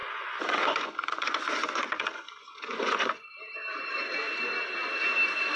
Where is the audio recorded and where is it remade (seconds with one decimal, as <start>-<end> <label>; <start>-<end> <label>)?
0.0-3.4 remade; 3.4-5.6 recorded